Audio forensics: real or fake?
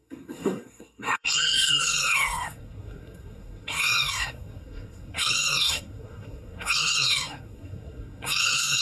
fake